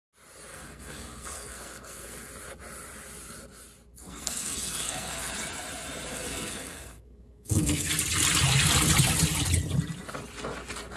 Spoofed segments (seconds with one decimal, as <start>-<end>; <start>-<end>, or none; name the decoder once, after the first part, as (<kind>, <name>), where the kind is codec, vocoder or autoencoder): 0.5-2.3 (codec, SNAC); 3.9-5.3; 6.1-7.9